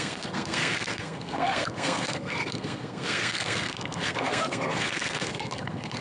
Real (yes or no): no